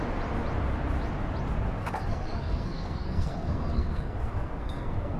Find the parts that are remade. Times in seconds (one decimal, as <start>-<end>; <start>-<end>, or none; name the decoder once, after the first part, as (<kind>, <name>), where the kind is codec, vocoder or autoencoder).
1.8-5.2 (codec, SNAC)